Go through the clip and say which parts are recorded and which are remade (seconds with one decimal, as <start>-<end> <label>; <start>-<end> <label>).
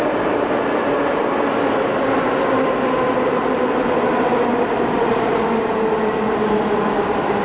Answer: 0.0-7.4 recorded